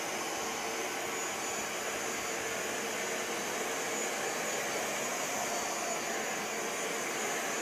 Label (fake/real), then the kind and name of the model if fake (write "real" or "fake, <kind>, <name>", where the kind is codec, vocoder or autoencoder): real